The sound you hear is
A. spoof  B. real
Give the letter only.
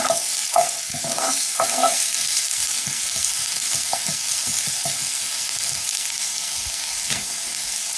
A